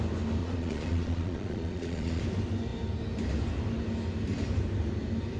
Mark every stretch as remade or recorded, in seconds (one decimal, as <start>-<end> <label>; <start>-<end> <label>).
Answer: 0.0-0.4 recorded; 0.4-2.2 remade; 2.2-5.4 recorded